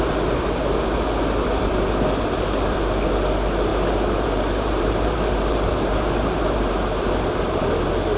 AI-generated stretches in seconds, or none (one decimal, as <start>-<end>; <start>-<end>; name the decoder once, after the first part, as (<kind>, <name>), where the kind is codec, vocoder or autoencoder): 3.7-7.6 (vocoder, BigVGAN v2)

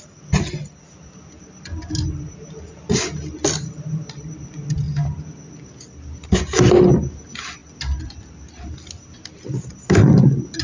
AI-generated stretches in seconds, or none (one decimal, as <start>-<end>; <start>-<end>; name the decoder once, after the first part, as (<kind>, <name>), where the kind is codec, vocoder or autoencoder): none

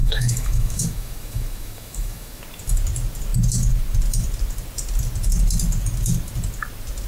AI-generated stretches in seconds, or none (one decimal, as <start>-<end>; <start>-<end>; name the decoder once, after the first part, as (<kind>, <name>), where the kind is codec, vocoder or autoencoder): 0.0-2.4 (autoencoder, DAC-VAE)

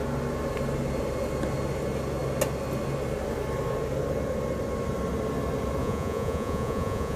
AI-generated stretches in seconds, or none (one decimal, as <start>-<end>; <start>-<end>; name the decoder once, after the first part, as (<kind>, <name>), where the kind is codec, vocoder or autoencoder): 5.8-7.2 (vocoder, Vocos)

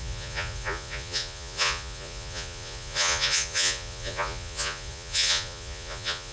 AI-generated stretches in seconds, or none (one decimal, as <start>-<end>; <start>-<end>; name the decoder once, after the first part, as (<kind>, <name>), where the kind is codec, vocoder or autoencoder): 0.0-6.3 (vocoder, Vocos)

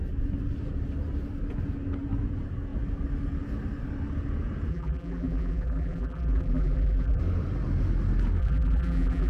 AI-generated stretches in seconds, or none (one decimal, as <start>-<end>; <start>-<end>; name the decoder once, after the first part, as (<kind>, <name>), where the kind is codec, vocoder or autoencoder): 4.7-7.2 (vocoder, BigVGAN v2); 8.4-9.3

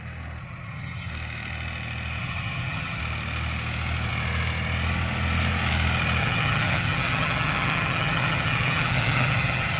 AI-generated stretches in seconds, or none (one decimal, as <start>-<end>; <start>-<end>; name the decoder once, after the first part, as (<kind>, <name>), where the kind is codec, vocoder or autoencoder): 0.4-1.1 (vocoder, HiFi-GAN); 2.2-3.0; 6.2-9.8

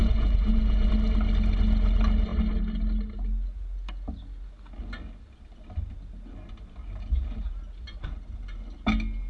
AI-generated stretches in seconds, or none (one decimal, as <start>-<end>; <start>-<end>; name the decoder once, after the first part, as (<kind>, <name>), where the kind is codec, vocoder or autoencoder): 0.0-0.9 (vocoder, Vocos)